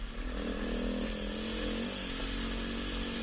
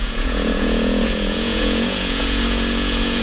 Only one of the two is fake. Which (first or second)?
second